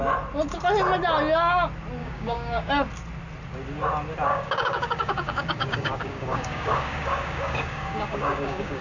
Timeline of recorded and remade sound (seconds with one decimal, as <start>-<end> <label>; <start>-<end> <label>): 0.0-2.0 recorded; 2.0-2.7 remade; 2.7-4.3 recorded; 4.3-8.8 remade